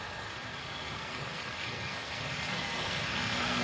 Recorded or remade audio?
remade